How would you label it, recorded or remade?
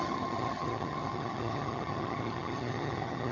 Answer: remade